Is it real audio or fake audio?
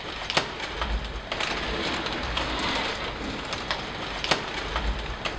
real